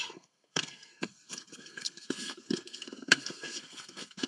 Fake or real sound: fake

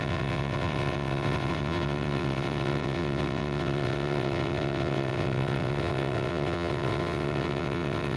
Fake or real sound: fake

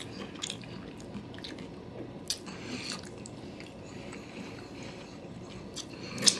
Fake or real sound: real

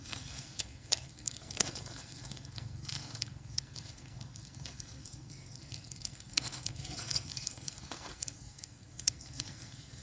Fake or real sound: fake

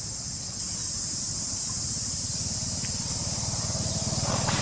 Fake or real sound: real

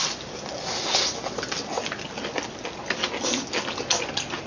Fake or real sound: real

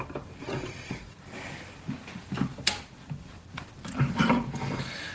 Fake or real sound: fake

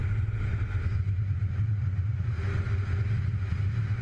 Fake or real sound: real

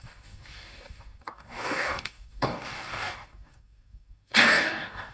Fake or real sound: fake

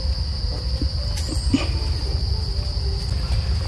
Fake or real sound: real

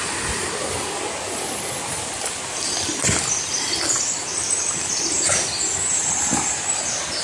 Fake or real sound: real